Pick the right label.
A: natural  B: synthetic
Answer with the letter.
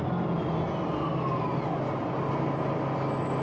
A